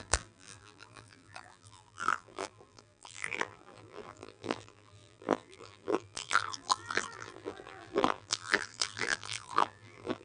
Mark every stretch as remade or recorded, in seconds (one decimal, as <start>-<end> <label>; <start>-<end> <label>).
0.0-10.2 remade